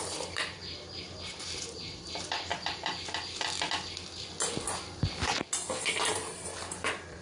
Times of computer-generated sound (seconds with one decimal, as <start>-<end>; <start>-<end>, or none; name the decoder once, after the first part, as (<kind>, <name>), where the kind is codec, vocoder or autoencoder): 0.0-2.5 (vocoder, BigVGAN v2); 6.1-7.2